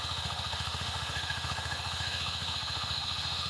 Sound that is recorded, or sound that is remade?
remade